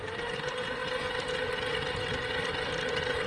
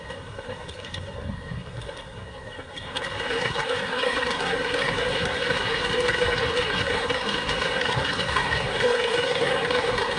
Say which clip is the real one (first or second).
first